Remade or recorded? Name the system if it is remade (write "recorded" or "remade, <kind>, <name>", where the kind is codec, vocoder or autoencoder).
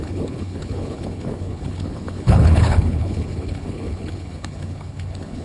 remade, codec, HILCodec